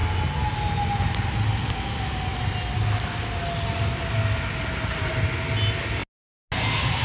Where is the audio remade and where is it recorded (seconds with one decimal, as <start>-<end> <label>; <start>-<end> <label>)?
0.0-7.0 recorded